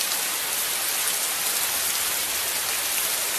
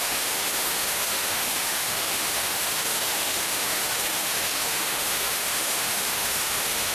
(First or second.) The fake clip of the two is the second